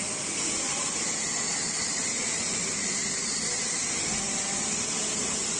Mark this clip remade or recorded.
recorded